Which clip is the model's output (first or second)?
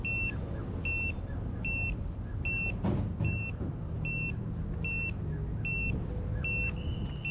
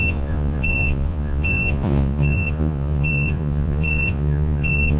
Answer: second